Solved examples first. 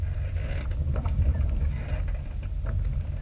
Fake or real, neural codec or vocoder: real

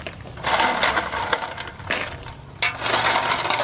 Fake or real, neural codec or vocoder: real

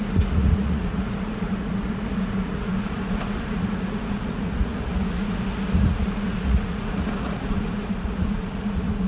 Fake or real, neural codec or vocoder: fake, vocoder, Vocos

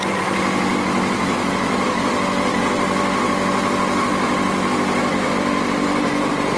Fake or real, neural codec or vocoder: real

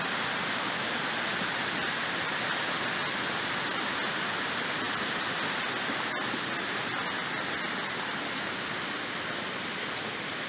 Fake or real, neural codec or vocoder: real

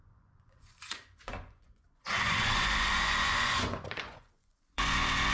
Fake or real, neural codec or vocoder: fake, vocoder, Vocos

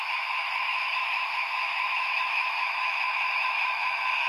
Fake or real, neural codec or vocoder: fake, autoencoder, DAC-VAE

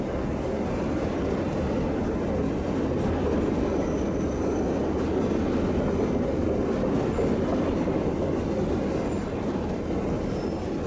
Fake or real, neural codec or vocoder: real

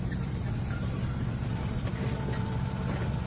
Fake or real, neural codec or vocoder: real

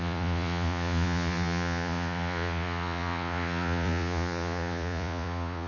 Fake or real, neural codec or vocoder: fake, vocoder, Vocos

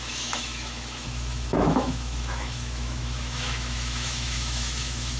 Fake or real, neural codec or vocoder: fake, autoencoder, DAC-VAE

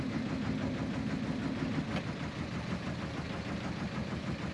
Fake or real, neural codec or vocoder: real